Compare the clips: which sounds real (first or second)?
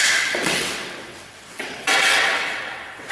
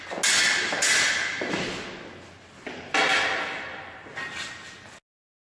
second